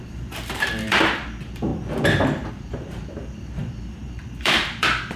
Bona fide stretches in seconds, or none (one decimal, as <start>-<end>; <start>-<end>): 1.7-2.5